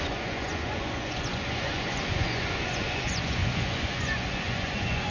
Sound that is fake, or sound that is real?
fake